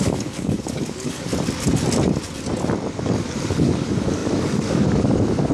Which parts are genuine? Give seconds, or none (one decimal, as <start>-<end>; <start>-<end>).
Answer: 1.3-2.9

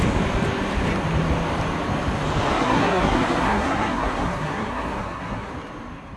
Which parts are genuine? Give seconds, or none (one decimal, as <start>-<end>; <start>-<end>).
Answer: 0.0-2.5; 5.5-6.2

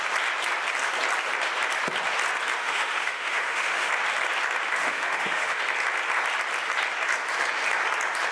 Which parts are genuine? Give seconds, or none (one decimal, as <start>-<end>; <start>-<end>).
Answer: 0.0-2.6; 3.9-4.8; 5.6-8.3

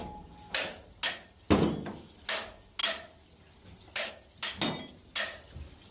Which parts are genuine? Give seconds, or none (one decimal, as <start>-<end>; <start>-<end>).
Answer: 0.0-5.9

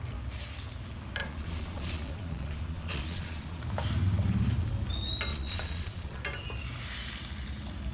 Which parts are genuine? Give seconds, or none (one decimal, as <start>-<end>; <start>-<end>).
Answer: 0.0-1.2; 3.6-5.3; 6.2-7.9